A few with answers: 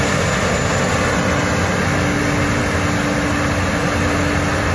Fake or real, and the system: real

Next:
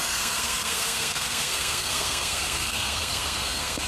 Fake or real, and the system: fake, codec, SNAC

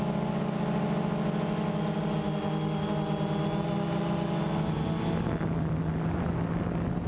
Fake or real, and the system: real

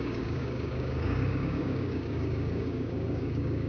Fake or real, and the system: fake, codec, DAC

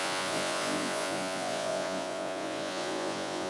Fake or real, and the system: fake, vocoder, Vocos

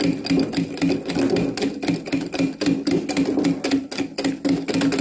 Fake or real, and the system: real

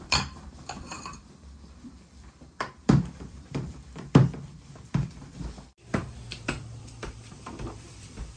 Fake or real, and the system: fake, vocoder, BigVGAN v2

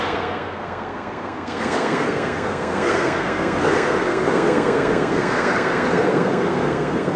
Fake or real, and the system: fake, codec, SNAC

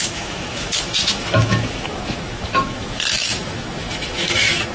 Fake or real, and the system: fake, autoencoder, DAC-VAE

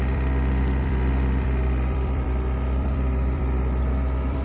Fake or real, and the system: fake, vocoder, BigVGAN v2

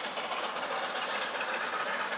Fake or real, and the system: fake, vocoder, BigVGAN v2